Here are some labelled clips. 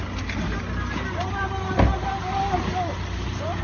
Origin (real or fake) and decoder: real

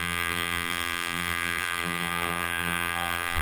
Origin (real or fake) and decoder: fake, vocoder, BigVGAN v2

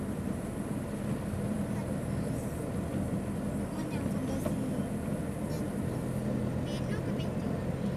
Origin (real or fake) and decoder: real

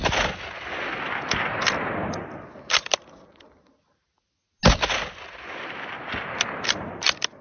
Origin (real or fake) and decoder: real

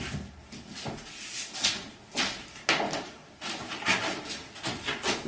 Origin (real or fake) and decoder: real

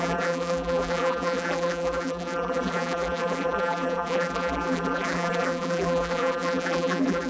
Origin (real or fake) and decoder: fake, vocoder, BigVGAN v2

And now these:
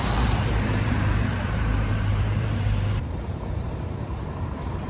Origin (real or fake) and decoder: fake, vocoder, BigVGAN v2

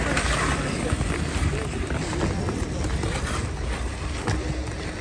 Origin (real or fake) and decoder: real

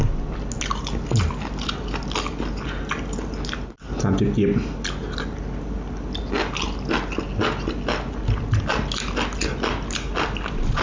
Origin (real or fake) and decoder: real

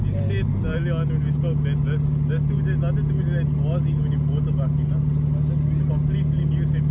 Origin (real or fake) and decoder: real